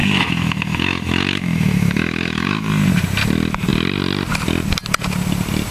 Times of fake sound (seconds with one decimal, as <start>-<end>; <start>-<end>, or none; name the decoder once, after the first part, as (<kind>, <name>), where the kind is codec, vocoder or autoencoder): 0.0-2.7 (autoencoder, DAC-VAE)